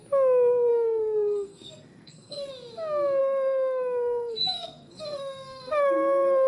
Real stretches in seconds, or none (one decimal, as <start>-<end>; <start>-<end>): 0.0-0.7; 2.5-3.2